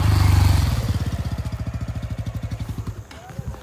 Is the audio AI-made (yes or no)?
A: no